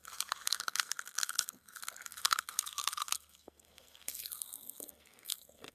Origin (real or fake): fake